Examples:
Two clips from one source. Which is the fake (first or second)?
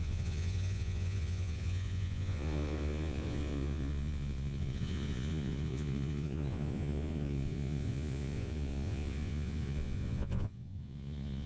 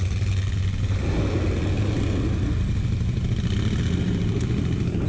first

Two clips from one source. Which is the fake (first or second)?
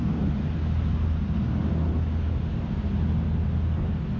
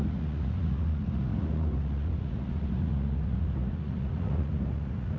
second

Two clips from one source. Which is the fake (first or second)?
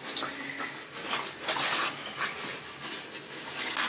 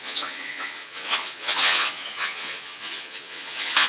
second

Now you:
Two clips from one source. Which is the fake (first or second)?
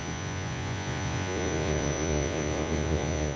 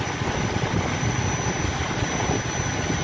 first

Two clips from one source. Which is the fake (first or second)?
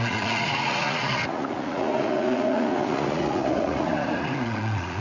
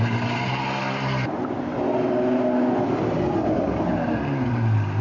first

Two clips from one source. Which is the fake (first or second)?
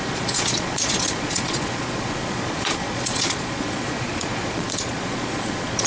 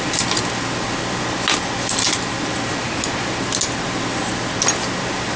first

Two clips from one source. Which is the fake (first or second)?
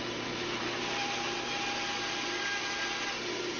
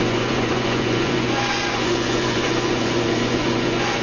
second